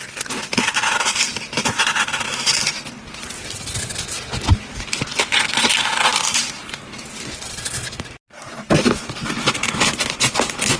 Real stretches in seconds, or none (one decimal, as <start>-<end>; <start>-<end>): 0.0-10.8